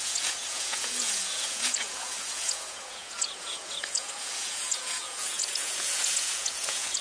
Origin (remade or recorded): remade